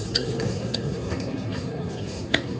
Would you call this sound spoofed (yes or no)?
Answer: yes